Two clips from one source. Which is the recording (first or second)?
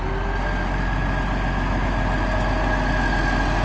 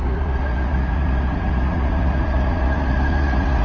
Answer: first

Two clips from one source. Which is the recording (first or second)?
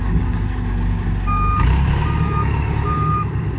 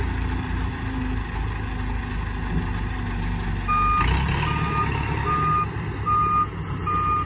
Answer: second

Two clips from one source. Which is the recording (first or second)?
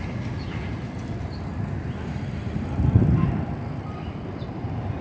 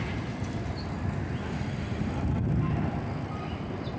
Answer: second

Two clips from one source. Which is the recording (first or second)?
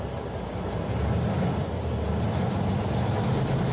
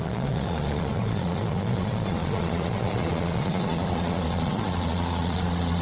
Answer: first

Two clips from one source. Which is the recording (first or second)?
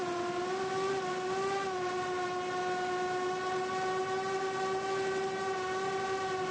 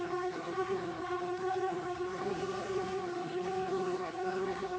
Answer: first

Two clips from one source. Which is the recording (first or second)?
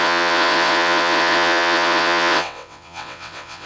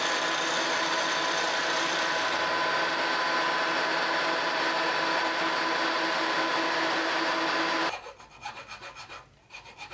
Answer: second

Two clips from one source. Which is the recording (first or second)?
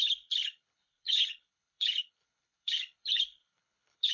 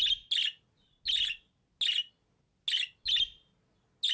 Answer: second